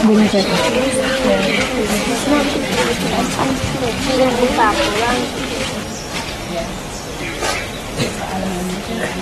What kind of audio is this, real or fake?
real